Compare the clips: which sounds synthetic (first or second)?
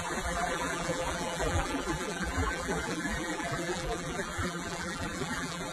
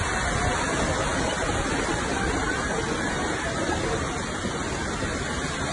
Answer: first